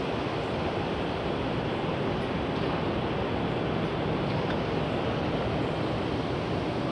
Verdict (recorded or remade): remade